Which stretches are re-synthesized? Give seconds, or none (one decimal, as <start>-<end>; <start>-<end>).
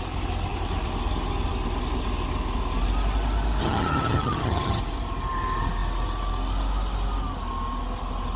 3.6-4.8